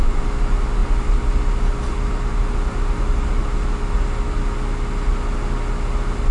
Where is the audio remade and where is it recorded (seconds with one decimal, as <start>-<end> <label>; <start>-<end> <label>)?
0.0-6.3 recorded